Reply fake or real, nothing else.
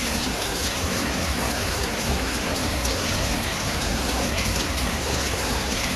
fake